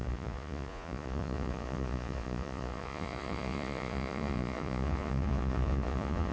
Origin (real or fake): fake